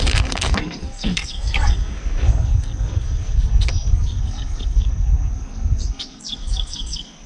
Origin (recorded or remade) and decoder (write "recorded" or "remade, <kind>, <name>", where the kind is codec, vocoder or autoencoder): remade, codec, SNAC